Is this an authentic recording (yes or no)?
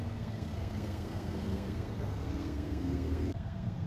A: no